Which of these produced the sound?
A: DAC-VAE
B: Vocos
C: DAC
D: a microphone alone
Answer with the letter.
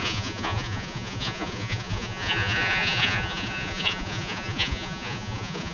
B